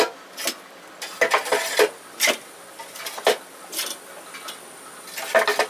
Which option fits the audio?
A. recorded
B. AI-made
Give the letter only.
A